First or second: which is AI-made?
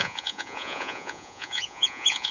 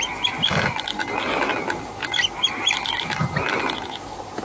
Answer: first